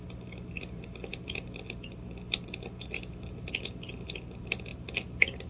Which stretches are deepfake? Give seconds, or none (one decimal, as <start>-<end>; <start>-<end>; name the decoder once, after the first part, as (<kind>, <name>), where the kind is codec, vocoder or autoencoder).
none